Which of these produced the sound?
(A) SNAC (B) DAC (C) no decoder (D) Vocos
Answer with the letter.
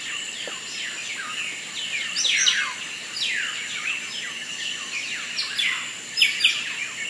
C